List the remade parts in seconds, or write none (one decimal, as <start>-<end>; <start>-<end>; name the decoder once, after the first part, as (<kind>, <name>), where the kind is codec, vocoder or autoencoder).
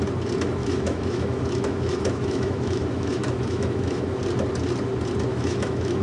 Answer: 0.6-4.2 (autoencoder, DAC-VAE); 5.3-6.0